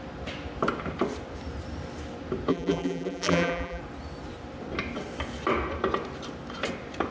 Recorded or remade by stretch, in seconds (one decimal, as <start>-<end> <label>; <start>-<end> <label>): 0.0-2.5 recorded; 2.5-3.8 remade; 3.8-7.1 recorded